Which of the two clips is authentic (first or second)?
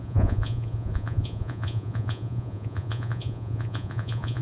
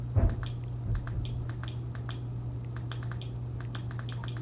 second